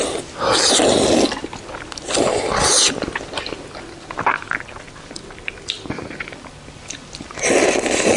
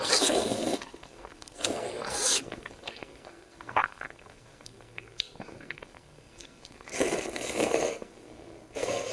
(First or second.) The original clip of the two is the first